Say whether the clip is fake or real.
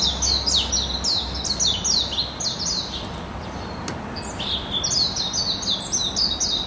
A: real